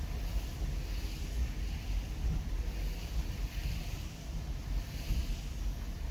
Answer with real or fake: real